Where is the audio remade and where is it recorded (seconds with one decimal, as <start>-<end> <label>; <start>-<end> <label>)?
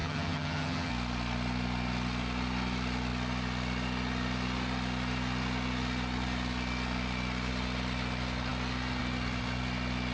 0.0-0.9 remade; 0.9-10.1 recorded